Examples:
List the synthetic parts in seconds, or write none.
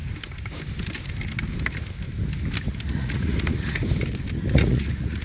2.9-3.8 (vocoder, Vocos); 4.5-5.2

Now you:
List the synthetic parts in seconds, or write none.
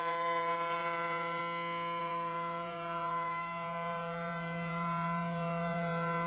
0.0-1.4 (vocoder, Vocos); 2.0-6.3